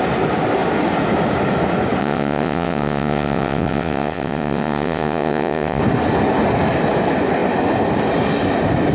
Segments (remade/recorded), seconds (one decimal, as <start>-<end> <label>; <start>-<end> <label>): 0.0-2.0 recorded; 2.0-5.8 remade; 5.8-8.9 recorded